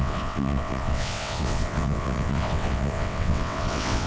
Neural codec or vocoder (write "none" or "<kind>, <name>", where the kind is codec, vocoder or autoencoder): vocoder, WaveNeXt